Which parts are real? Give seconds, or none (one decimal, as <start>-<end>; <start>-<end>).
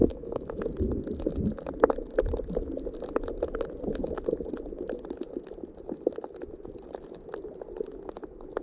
0.6-8.6